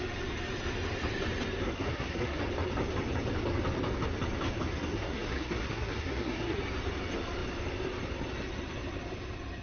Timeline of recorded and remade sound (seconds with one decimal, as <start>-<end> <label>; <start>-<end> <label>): 0.0-1.6 recorded; 1.6-2.4 remade; 2.4-4.7 recorded; 4.7-6.6 remade; 6.6-9.6 recorded